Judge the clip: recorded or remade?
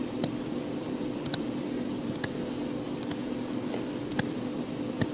recorded